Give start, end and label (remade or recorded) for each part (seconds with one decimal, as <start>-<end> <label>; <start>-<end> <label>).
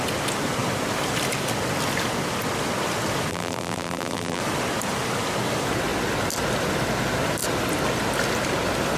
0.0-3.3 recorded; 3.3-4.4 remade; 4.4-9.0 recorded